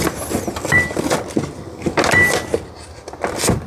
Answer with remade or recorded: recorded